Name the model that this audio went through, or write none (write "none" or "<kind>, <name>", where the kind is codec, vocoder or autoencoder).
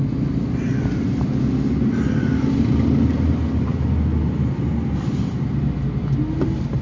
none